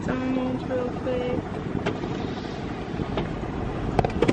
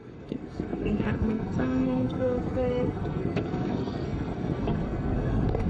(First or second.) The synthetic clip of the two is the second